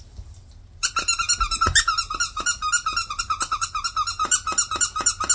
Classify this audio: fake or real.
real